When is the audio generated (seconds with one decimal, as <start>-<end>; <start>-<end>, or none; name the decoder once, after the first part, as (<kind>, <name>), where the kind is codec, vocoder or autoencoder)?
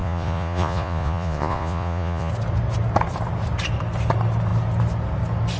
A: 0.0-2.3 (vocoder, Vocos)